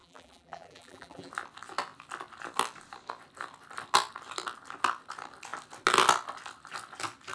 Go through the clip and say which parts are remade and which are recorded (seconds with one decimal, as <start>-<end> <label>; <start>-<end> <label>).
0.0-1.3 remade; 1.3-7.3 recorded

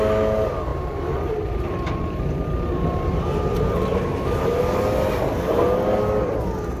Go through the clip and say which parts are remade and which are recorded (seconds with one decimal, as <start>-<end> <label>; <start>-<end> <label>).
0.0-0.7 recorded; 0.7-4.6 remade; 4.6-6.8 recorded

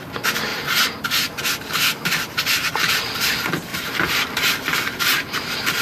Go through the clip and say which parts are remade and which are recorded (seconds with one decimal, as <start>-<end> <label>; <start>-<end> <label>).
0.0-0.5 recorded; 0.5-1.4 remade; 1.4-3.7 recorded; 3.7-5.0 remade; 5.0-5.8 recorded

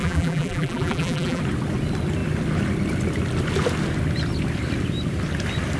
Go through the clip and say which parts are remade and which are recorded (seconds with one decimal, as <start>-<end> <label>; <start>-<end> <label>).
0.0-1.4 remade; 1.4-5.8 recorded

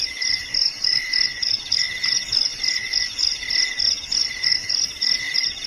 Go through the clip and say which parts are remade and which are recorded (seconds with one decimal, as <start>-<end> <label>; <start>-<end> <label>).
0.0-0.9 recorded; 0.9-3.7 remade; 3.7-4.2 recorded; 4.2-5.2 remade; 5.2-5.7 recorded

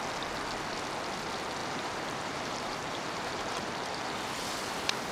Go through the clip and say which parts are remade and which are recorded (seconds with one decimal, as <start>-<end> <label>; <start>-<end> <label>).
0.0-1.6 recorded; 1.6-4.0 remade; 4.0-5.1 recorded

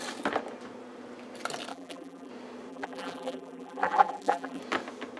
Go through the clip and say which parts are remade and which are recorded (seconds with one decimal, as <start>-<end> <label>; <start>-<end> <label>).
0.0-1.7 recorded; 1.7-2.3 remade; 2.3-2.7 recorded; 2.7-4.6 remade; 4.6-5.2 recorded